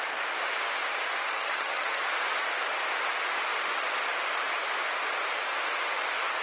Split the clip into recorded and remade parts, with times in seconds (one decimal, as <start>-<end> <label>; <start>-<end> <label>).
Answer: 0.0-1.2 recorded; 1.2-2.0 remade; 2.0-6.4 recorded